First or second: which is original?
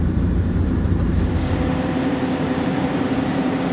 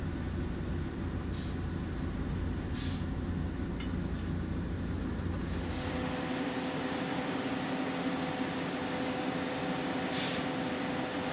second